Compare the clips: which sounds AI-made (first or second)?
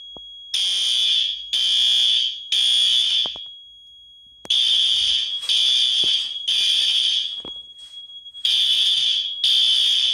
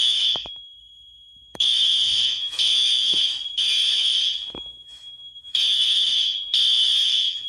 second